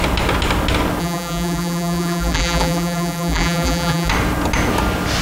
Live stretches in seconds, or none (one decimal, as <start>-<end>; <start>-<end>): 0.0-1.0; 4.1-5.2

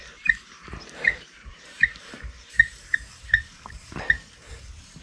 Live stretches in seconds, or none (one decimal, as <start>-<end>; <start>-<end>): none

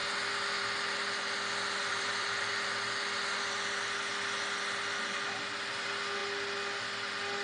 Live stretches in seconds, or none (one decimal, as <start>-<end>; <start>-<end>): 0.0-1.9; 2.5-7.4

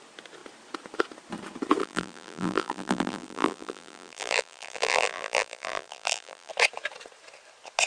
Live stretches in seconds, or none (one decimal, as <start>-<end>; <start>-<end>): 0.0-1.8; 6.5-7.9

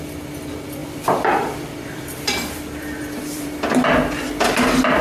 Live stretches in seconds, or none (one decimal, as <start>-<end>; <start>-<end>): 0.0-0.8; 3.8-5.0

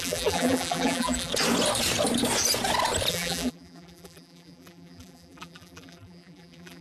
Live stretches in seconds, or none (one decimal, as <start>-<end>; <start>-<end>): 1.3-3.1

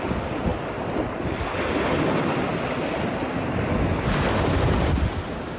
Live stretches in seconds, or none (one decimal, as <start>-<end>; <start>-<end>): 0.0-5.6